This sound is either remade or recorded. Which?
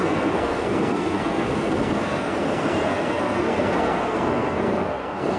remade